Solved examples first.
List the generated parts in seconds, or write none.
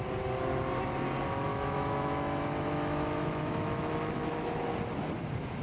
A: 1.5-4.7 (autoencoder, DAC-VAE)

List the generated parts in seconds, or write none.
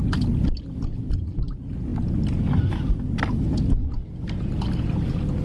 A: none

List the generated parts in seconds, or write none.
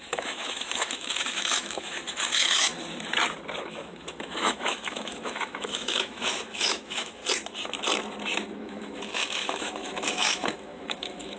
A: 0.0-2.7 (autoencoder, DAC-VAE); 3.6-7.2; 8.6-11.4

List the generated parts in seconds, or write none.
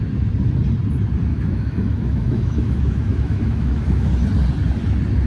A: 1.3-4.1 (autoencoder, DAC-VAE)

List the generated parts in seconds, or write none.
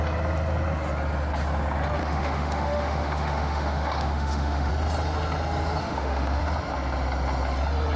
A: 2.0-4.7 (autoencoder, DAC-VAE); 5.8-6.4